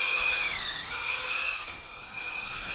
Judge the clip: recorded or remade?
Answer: remade